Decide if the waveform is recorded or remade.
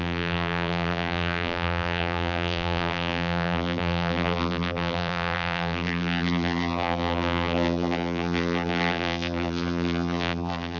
remade